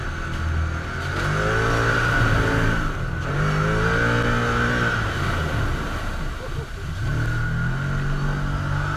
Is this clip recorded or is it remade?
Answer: recorded